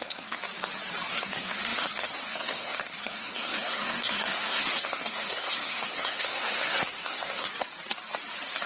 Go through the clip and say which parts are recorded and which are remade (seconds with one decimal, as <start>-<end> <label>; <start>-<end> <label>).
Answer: 0.0-0.4 remade; 0.4-1.1 recorded; 1.1-7.5 remade; 7.5-8.7 recorded